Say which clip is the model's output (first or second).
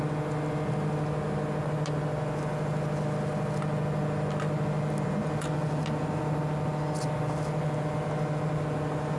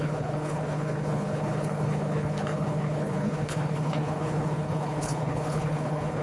second